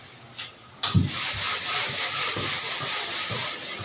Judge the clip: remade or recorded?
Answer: recorded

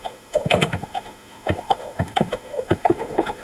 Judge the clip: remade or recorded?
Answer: remade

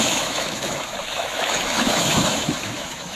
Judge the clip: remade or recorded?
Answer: remade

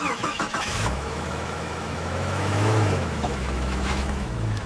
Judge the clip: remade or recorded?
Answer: remade